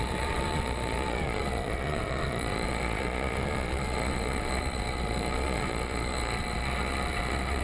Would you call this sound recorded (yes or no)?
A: no